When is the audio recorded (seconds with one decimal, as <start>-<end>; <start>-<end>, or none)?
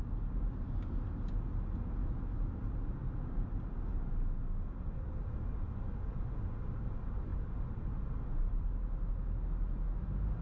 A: 0.0-10.4